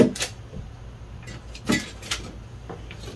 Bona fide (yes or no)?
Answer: yes